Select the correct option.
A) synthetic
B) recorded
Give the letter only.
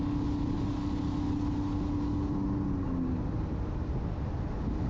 B